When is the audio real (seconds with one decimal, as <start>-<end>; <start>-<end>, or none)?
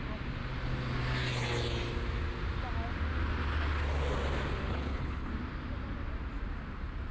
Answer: 0.0-4.7; 5.3-7.1